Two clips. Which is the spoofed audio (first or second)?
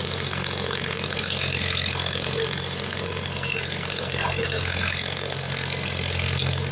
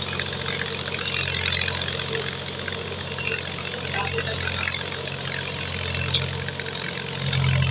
first